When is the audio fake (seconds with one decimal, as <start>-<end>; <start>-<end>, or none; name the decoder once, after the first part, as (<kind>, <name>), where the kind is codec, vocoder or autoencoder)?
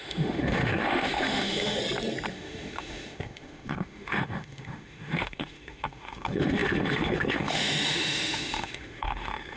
0.0-1.8 (autoencoder, DAC-VAE); 2.3-9.6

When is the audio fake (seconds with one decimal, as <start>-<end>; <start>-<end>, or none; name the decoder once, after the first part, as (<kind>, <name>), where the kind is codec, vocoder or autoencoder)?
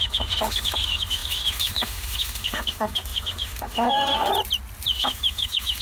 0.0-4.3 (autoencoder, DAC-VAE); 4.9-5.8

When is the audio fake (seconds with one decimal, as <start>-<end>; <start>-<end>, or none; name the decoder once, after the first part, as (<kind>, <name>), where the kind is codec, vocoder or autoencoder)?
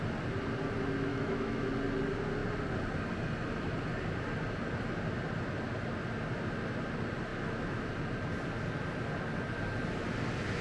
1.1-1.7 (autoencoder, DAC-VAE); 7.3-7.9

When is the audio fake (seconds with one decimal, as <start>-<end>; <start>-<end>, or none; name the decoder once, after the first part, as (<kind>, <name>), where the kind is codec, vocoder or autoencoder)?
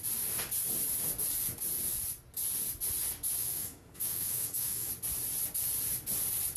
3.4-4.9 (autoencoder, DAC-VAE)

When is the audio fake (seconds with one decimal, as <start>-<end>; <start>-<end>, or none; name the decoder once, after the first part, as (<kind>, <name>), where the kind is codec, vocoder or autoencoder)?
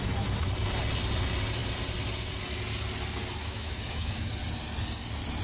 3.4-4.3 (autoencoder, DAC-VAE)